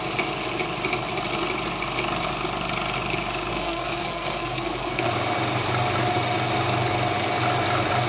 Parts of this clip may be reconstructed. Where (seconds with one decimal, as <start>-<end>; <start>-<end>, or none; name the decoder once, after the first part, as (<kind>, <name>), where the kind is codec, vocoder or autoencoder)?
3.5-5.1 (codec, SNAC)